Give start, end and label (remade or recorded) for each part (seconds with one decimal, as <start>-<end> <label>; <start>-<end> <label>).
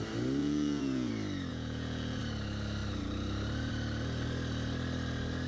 0.0-0.4 recorded; 0.4-1.1 remade; 1.1-1.5 recorded; 1.5-2.2 remade; 2.2-5.5 recorded